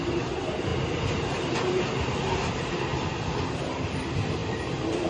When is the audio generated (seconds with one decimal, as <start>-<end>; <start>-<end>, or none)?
none